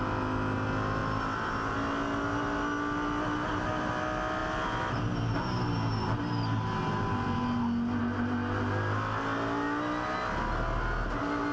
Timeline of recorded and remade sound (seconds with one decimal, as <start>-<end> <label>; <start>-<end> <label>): 0.0-11.5 recorded